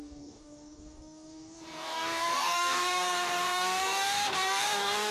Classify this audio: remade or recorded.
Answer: remade